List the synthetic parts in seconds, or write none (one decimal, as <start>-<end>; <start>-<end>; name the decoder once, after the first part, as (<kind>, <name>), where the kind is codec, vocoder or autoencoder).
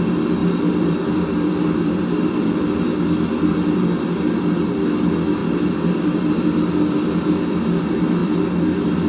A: 0.4-3.0 (vocoder, BigVGAN v2); 5.4-6.7; 8.2-9.1